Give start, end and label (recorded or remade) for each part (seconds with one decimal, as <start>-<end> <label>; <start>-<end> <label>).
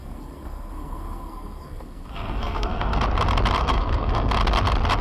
0.0-3.0 remade; 3.0-3.6 recorded; 3.6-4.3 remade; 4.3-5.0 recorded